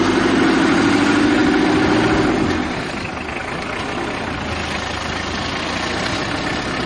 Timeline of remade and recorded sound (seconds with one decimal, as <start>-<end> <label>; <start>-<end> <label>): 0.0-6.9 recorded